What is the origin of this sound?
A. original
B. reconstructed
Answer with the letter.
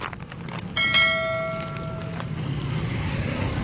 A